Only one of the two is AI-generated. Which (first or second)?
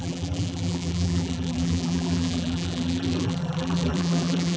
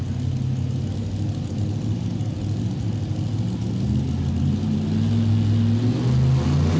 first